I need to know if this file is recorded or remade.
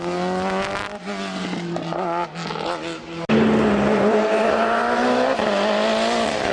recorded